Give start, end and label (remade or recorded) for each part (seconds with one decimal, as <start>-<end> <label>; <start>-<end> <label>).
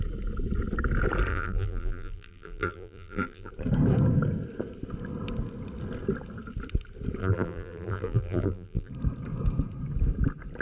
0.0-1.3 recorded; 1.3-3.5 remade; 3.5-7.2 recorded; 7.2-8.9 remade; 8.9-10.6 recorded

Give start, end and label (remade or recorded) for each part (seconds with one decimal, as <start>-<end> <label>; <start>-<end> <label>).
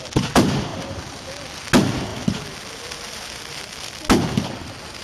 0.0-0.7 recorded; 0.7-1.3 remade; 1.3-5.0 recorded